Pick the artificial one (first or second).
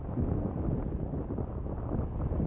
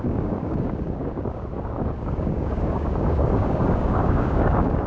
second